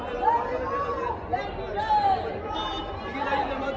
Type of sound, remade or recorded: recorded